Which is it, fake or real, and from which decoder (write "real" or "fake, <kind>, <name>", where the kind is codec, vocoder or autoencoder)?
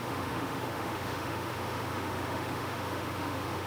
fake, autoencoder, DAC-VAE